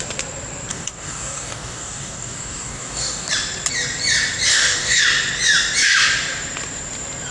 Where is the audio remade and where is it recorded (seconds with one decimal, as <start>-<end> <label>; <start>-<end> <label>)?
0.0-0.7 recorded; 0.7-3.3 remade; 3.3-4.5 recorded; 4.5-5.0 remade; 5.0-7.3 recorded